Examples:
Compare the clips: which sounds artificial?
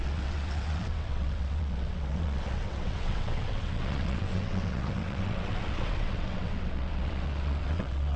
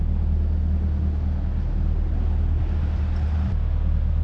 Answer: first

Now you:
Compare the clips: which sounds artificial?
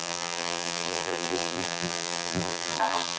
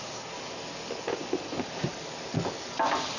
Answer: first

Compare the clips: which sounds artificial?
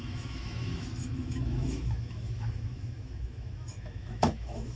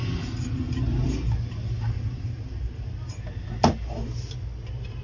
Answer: first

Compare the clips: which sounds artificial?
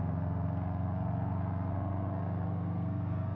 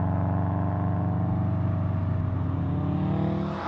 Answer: first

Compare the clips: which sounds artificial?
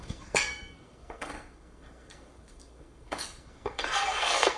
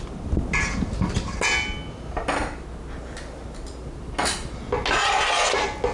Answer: first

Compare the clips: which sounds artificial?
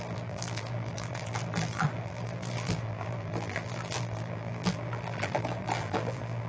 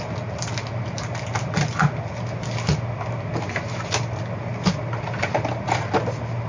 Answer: first